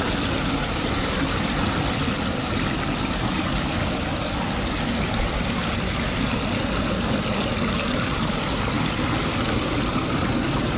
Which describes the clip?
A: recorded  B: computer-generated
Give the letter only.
A